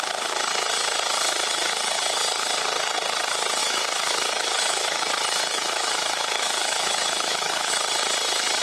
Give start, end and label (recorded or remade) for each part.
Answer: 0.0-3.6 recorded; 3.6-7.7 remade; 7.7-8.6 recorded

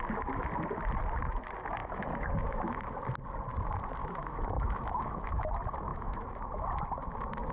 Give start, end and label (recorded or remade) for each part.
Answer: 0.0-1.8 recorded; 1.8-2.8 remade; 2.8-4.0 recorded; 4.0-5.5 remade; 5.5-5.9 recorded; 5.9-6.6 remade; 6.6-7.5 recorded

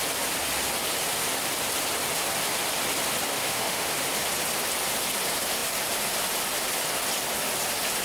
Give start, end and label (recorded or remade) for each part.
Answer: 0.0-3.3 recorded; 3.3-3.9 remade; 3.9-8.0 recorded

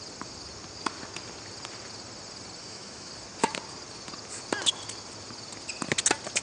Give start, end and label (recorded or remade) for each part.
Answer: 0.0-2.6 recorded; 2.6-3.1 remade; 3.1-6.4 recorded

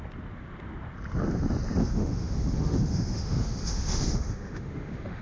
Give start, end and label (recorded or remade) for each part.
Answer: 0.0-1.8 recorded; 1.8-5.2 remade

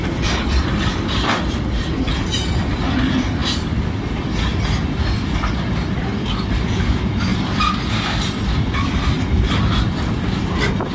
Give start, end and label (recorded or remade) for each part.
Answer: 0.0-10.9 recorded